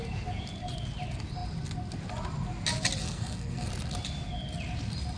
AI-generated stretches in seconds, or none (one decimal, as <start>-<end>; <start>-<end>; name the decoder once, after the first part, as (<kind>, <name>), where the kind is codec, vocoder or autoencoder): 3.0-3.7 (codec, SNAC)